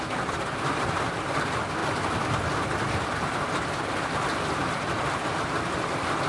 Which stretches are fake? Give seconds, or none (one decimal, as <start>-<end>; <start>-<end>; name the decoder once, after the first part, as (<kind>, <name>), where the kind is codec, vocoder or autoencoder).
none